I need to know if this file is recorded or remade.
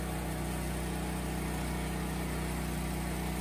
recorded